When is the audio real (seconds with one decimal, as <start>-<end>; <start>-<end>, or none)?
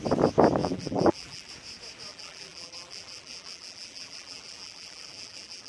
0.0-0.6; 1.5-2.1